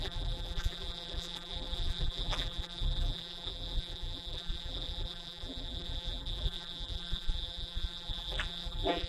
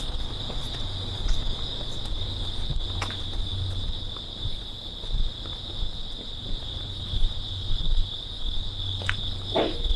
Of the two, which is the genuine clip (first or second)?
second